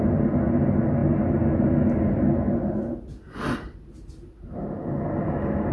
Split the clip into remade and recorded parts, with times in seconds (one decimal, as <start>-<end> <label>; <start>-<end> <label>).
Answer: 0.0-5.7 recorded